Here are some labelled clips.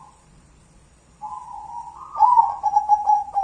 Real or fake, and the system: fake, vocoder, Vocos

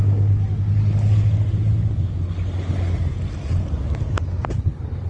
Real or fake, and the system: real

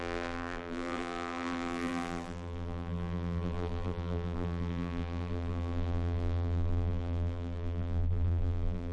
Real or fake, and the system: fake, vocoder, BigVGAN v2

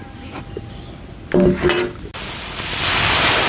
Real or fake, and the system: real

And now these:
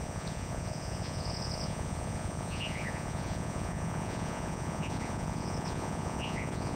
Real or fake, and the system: fake, vocoder, Vocos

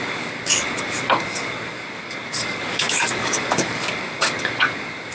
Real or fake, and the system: fake, codec, DAC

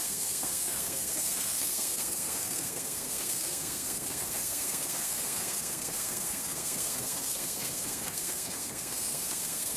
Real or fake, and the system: fake, codec, SNAC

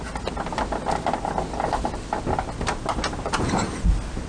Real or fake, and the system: real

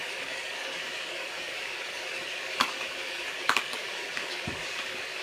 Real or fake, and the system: fake, codec, DAC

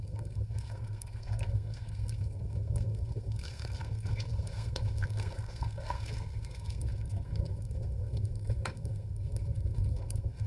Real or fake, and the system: fake, codec, SNAC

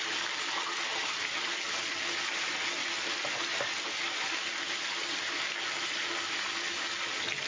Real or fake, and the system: real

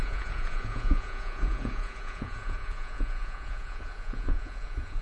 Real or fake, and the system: fake, vocoder, Vocos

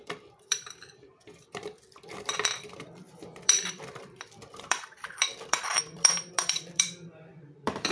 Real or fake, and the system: fake, vocoder, BigVGAN v2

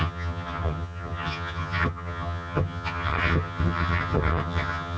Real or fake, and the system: fake, vocoder, HiFi-GAN